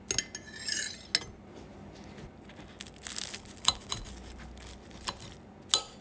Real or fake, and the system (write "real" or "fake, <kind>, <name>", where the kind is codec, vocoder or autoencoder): real